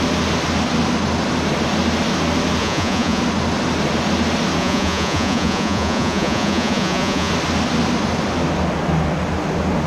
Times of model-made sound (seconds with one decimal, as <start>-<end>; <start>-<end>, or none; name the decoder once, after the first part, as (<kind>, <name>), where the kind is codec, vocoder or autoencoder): 2.6-3.2 (vocoder, Vocos); 4.6-7.3